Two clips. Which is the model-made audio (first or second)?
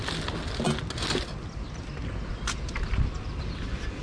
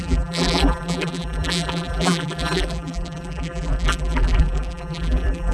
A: second